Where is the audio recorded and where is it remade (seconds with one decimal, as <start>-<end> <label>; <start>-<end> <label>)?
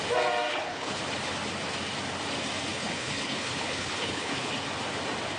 0.0-0.5 recorded; 0.5-1.0 remade; 1.0-2.7 recorded; 2.7-4.5 remade; 4.5-5.4 recorded